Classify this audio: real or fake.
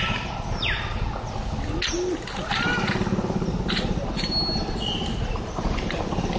real